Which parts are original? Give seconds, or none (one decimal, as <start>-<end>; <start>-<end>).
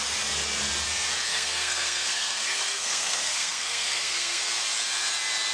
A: 0.0-1.3; 4.4-5.5